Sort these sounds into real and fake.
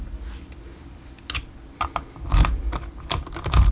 real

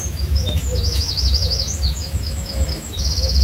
fake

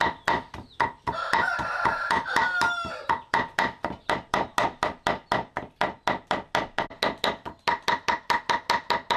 real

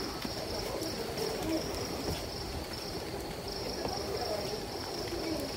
real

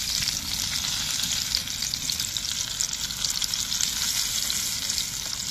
real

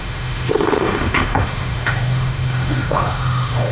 fake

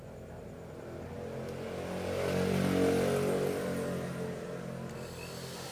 real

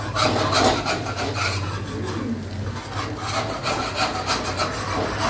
real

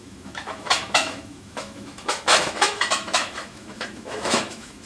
fake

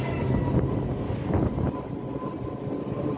real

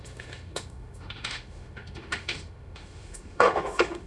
fake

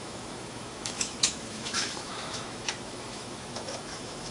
fake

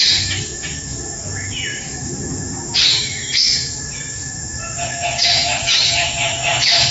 fake